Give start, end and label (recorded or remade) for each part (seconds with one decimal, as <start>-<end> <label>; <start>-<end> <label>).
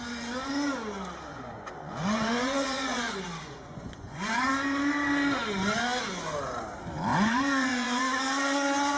0.0-1.3 recorded; 1.3-4.5 remade; 4.5-7.1 recorded; 7.1-8.0 remade; 8.0-9.0 recorded